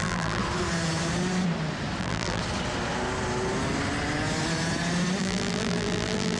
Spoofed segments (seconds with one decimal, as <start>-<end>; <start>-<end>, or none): 0.0-0.4; 2.0-2.4; 5.2-6.4